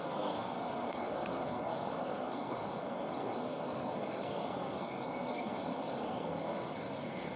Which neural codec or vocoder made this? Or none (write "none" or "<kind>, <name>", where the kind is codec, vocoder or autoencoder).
codec, SNAC